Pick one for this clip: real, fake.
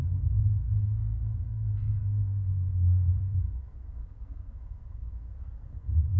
fake